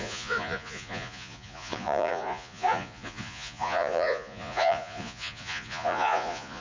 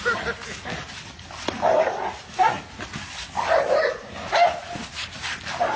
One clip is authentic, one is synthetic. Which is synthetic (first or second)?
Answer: first